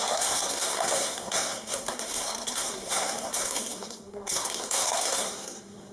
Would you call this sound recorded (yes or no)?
no